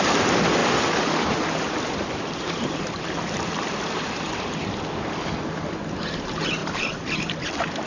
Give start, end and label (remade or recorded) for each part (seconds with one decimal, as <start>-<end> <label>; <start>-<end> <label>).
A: 0.0-0.6 recorded; 0.6-4.8 remade; 4.8-6.6 recorded; 6.6-7.9 remade